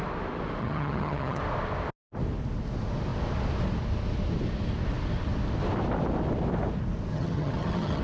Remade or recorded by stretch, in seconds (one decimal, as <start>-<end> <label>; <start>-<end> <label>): 0.0-0.6 recorded; 0.6-1.4 remade; 1.4-7.1 recorded; 7.1-8.0 remade